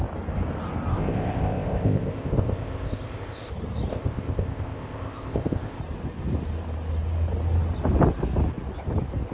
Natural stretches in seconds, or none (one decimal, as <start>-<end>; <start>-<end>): 0.0-0.9; 3.5-3.9; 5.8-9.3